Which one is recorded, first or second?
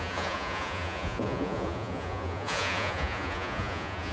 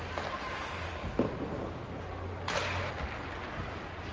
second